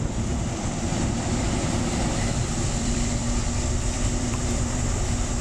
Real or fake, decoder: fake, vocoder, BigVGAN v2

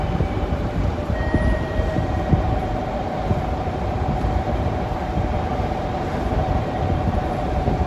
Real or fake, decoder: fake, vocoder, BigVGAN v2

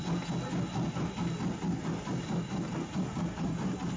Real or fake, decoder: real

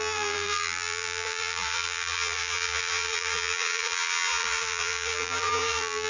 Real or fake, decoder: fake, vocoder, BigVGAN v2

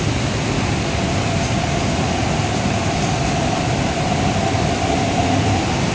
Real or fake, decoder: real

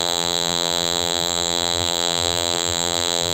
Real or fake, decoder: fake, vocoder, BigVGAN v2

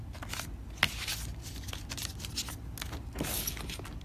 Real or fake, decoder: real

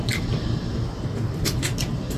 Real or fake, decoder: fake, vocoder, BigVGAN v2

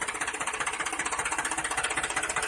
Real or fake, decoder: fake, vocoder, BigVGAN v2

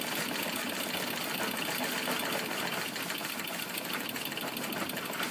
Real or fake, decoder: real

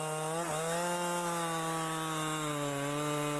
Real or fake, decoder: real